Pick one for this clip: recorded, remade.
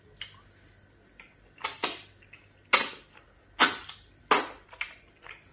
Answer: recorded